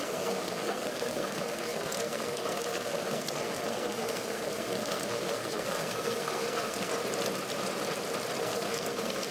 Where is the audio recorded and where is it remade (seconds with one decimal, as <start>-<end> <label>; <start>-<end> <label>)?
0.0-6.9 remade; 6.9-8.4 recorded; 8.4-9.3 remade